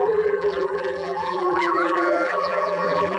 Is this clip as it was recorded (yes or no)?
no